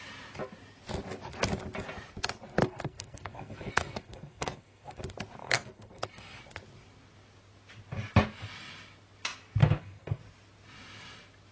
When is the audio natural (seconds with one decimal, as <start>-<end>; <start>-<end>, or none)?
0.0-2.6; 5.0-5.4; 6.4-9.6; 10.2-11.5